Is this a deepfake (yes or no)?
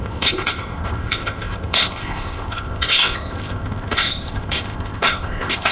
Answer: yes